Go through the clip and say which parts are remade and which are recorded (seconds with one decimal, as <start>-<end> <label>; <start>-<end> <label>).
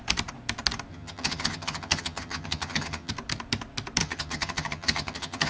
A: 0.0-0.9 recorded; 0.9-3.1 remade; 3.1-4.0 recorded; 4.0-5.5 remade